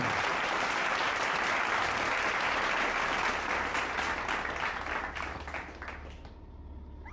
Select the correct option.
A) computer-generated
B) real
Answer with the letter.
B